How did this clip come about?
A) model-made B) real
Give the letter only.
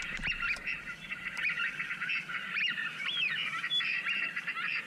A